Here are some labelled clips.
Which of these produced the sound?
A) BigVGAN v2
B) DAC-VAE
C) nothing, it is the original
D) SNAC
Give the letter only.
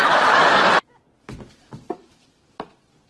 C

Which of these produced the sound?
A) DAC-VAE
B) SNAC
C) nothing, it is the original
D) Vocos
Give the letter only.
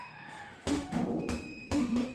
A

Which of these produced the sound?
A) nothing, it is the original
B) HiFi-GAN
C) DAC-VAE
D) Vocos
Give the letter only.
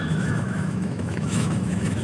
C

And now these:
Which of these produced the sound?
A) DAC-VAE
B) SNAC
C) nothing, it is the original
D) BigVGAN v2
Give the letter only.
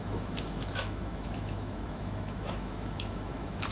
A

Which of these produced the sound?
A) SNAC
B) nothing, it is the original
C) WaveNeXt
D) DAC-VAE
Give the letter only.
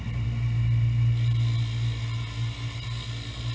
B